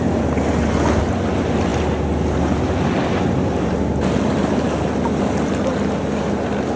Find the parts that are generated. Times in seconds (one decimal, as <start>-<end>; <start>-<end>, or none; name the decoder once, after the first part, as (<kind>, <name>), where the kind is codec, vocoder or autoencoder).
none